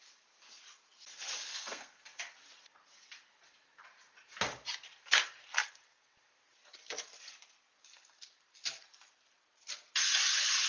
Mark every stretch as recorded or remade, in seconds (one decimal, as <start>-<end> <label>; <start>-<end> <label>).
0.0-1.5 recorded; 1.5-2.1 remade; 2.1-10.7 recorded